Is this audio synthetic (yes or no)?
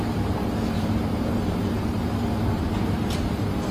yes